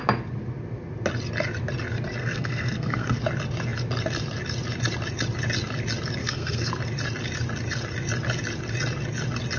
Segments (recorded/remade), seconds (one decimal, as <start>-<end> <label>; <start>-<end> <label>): 0.0-2.2 recorded; 2.2-3.2 remade; 3.2-6.2 recorded; 6.2-6.7 remade; 6.7-9.6 recorded